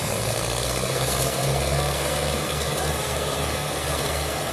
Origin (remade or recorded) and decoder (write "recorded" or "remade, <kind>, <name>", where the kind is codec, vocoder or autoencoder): remade, codec, SNAC